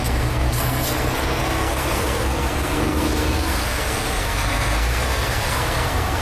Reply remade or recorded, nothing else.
remade